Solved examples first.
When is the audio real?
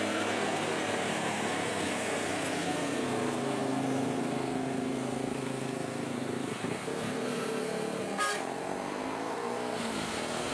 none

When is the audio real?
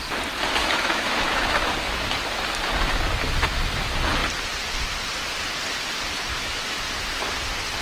0.0-0.6; 2.2-6.3; 6.8-7.8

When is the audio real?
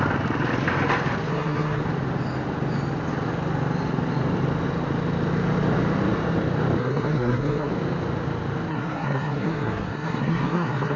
0.0-1.3; 1.8-6.8; 7.7-8.7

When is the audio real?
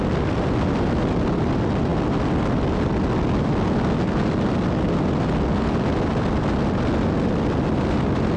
0.0-8.4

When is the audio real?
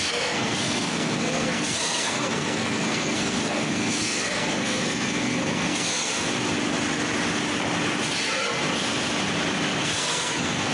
6.1-9.8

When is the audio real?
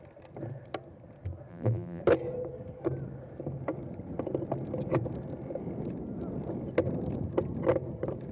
0.0-1.5; 2.0-8.3